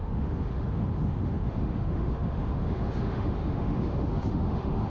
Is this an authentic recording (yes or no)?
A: no